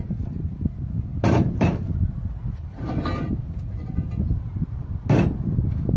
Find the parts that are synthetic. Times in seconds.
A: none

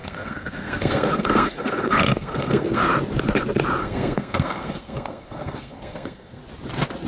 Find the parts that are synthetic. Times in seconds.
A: 0.0-2.8 (codec, SNAC); 3.8-6.4

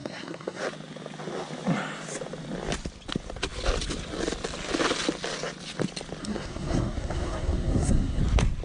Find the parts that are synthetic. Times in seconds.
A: 0.0-0.6 (codec, SNAC); 6.2-8.2